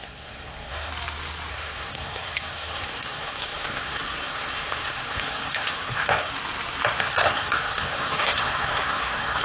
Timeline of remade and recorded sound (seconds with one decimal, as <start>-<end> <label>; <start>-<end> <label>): 0.0-0.9 remade; 0.9-1.5 recorded; 1.5-6.3 remade; 6.3-7.0 recorded; 7.0-9.4 remade